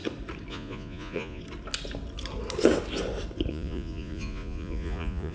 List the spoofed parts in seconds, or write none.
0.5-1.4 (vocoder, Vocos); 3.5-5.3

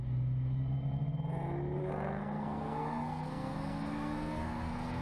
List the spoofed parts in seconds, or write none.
1.8-5.0 (codec, SNAC)

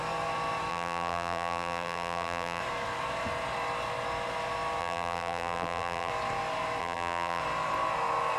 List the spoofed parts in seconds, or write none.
0.7-2.6 (vocoder, BigVGAN v2); 4.8-6.1; 6.8-7.4

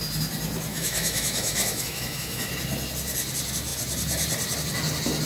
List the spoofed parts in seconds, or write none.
0.7-2.5 (autoencoder, DAC-VAE)